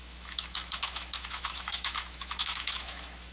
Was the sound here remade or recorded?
remade